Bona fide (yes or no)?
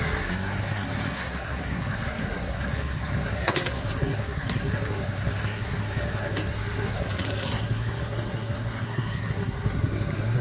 no